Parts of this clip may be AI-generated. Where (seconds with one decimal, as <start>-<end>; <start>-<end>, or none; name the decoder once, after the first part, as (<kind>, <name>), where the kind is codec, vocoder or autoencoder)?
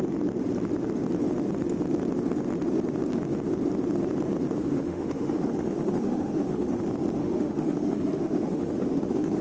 4.6-6.8 (autoencoder, DAC-VAE); 7.2-9.4